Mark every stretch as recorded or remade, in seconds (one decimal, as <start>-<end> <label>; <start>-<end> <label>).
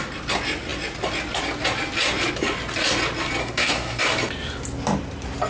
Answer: 0.0-3.4 recorded; 3.4-4.0 remade; 4.0-5.5 recorded